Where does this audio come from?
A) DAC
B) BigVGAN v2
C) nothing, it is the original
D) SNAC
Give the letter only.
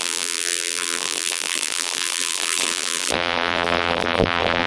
B